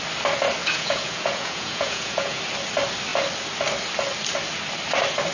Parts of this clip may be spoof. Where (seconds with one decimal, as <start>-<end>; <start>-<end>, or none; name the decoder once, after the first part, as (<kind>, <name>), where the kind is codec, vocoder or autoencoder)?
0.6-2.4 (vocoder, Vocos)